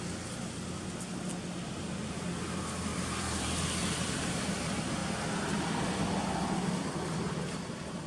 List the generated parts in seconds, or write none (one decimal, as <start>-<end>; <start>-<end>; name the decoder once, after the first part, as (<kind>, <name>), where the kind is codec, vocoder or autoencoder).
2.9-4.6 (vocoder, BigVGAN v2)